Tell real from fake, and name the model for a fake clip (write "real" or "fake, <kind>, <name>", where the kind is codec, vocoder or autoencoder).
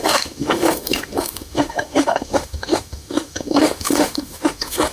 fake, autoencoder, DAC-VAE